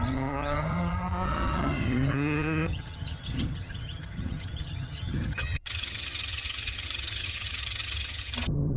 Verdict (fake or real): fake